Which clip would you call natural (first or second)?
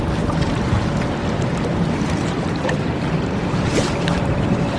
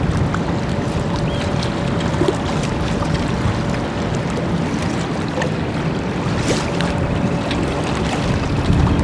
second